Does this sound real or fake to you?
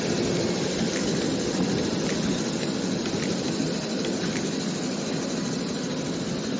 real